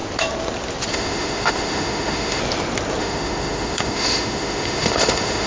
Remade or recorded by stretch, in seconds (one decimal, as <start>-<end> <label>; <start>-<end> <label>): 0.0-0.9 recorded; 0.9-2.4 remade; 2.4-3.0 recorded; 3.0-5.5 remade